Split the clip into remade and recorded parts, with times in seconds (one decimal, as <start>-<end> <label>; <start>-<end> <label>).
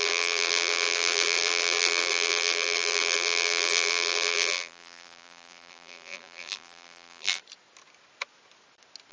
0.0-7.4 remade; 7.4-9.1 recorded